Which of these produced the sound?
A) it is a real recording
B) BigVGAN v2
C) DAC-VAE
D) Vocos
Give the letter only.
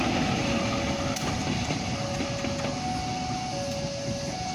A